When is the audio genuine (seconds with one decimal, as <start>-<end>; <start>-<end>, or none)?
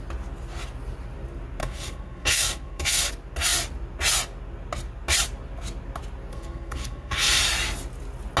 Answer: 0.0-1.6; 3.1-6.3; 7.4-8.4